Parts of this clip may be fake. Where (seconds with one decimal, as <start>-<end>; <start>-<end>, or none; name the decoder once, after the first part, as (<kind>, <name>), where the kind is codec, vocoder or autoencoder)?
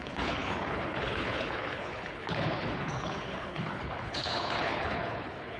0.0-5.6 (codec, HILCodec)